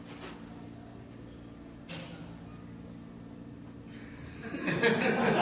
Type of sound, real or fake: real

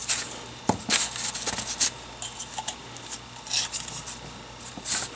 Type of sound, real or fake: real